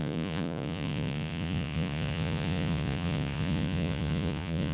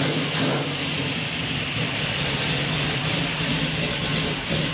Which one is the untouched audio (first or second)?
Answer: second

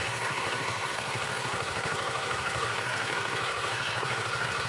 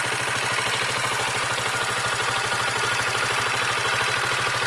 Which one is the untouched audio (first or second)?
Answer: second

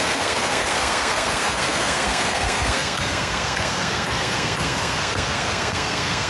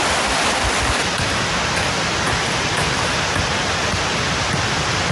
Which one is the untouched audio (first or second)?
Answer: second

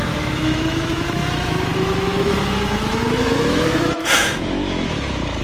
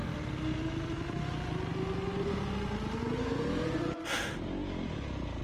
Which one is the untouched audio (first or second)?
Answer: second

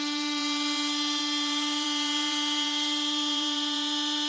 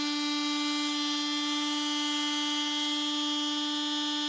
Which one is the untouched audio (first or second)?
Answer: second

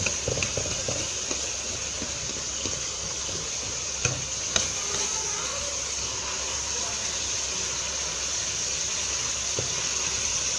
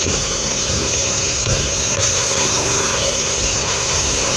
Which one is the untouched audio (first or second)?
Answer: first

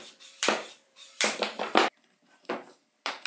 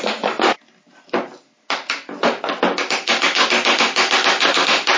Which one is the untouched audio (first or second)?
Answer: second